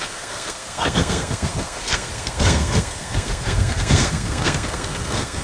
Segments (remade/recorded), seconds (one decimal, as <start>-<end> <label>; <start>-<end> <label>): 0.0-5.4 remade